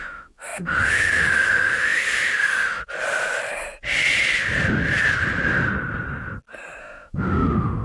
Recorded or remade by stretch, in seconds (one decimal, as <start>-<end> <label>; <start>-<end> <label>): 0.0-2.8 remade; 2.8-6.8 recorded; 6.8-7.8 remade